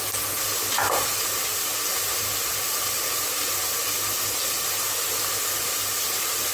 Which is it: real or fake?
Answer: real